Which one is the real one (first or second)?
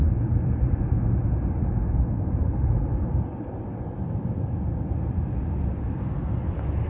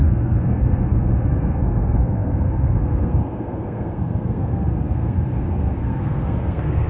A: first